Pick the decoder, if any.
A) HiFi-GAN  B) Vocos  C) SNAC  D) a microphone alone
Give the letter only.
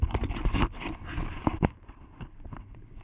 D